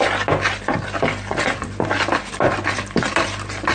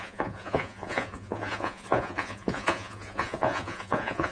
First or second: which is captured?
first